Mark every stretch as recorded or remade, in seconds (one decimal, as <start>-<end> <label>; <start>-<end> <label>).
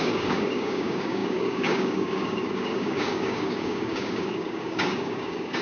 0.0-5.6 remade